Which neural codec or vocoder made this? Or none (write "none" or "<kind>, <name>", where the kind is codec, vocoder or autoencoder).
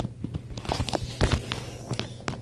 none